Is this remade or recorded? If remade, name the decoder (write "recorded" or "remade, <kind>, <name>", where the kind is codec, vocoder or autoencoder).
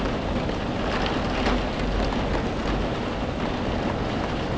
recorded